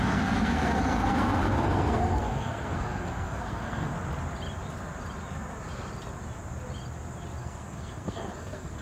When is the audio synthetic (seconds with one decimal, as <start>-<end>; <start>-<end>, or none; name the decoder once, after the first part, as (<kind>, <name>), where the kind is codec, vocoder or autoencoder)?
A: 0.0-3.9 (codec, SNAC); 7.4-8.8